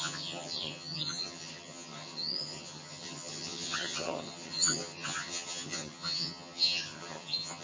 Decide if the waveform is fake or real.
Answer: fake